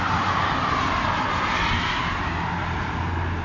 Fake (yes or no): no